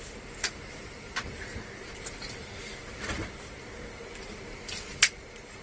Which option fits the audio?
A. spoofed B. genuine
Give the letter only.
A